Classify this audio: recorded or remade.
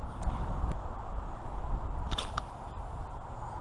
recorded